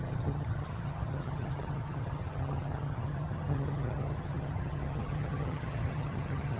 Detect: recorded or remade remade